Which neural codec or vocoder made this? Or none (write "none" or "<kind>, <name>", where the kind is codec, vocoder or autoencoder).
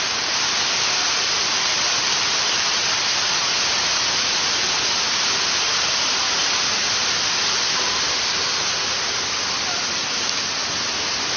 none